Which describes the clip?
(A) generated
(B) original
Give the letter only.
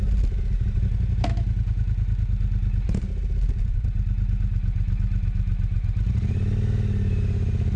B